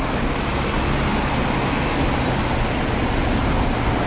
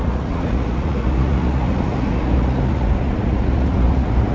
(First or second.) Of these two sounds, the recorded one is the first